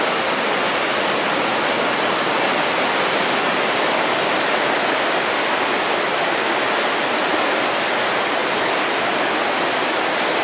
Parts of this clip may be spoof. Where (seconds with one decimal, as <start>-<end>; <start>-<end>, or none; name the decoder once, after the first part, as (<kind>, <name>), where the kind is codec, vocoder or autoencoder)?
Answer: none